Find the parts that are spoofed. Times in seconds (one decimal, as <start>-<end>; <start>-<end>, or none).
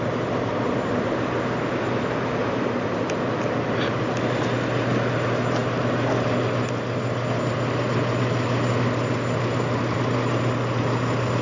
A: none